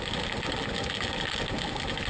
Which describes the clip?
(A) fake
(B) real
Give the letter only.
B